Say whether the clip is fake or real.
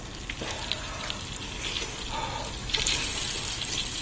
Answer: real